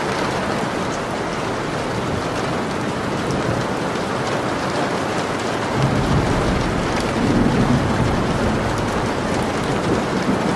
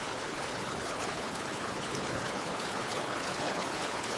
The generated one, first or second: second